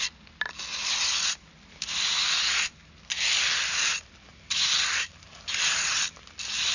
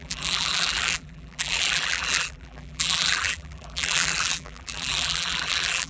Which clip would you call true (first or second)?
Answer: first